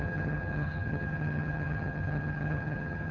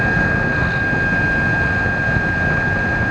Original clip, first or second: second